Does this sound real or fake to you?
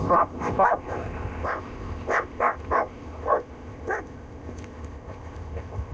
fake